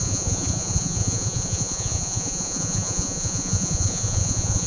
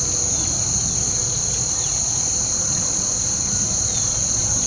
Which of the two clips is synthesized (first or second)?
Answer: first